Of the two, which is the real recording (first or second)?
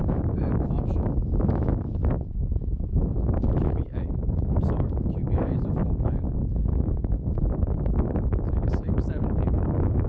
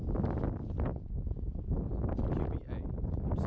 second